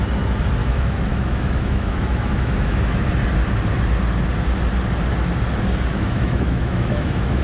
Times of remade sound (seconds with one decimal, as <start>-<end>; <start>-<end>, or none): 0.6-3.1; 5.9-7.4